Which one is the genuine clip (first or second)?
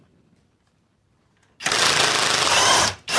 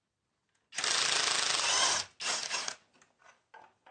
second